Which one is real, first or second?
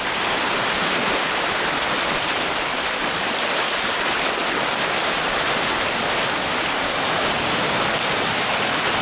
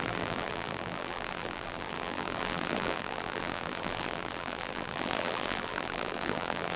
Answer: first